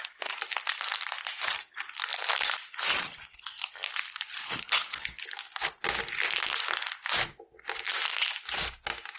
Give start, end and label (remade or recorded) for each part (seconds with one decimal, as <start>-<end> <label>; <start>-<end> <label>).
0.0-4.4 recorded; 4.4-5.2 remade; 5.2-9.2 recorded